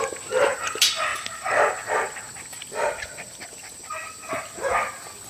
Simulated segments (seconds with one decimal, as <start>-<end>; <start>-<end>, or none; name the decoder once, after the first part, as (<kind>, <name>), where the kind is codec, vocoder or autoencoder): none